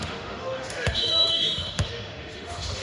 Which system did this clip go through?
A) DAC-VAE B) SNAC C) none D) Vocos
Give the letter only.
A